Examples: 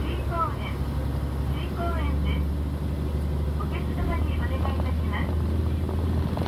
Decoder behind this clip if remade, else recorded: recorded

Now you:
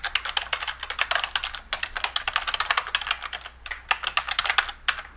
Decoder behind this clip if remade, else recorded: recorded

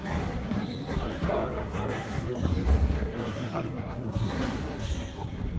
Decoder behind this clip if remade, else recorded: remade, codec, SNAC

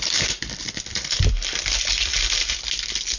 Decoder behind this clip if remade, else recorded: recorded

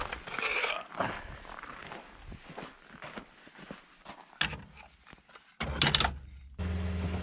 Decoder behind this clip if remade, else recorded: recorded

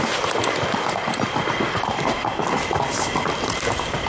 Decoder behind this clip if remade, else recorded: recorded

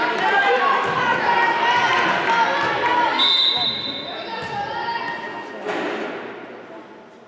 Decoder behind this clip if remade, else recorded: recorded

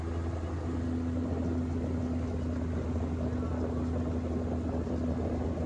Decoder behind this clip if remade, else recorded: recorded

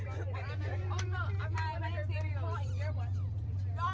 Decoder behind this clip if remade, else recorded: remade, vocoder, BigVGAN v2